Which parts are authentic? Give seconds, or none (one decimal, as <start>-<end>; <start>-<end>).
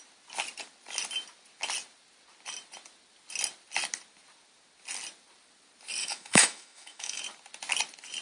0.0-6.0; 7.2-8.2